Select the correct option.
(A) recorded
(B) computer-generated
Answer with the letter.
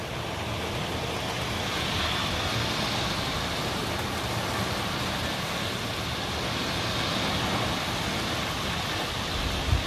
A